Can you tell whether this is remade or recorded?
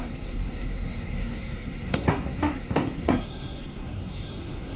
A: remade